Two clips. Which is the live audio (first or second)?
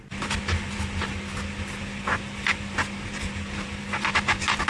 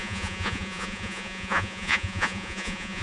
first